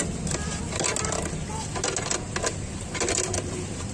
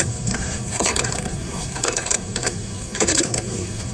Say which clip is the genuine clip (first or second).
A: first